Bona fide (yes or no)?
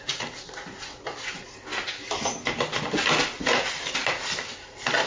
yes